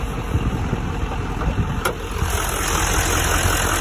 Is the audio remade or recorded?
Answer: recorded